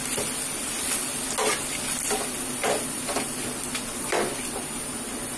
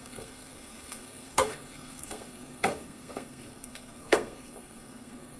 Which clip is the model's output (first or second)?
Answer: second